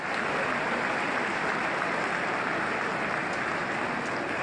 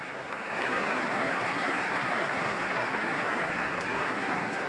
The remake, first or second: second